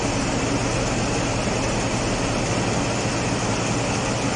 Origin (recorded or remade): recorded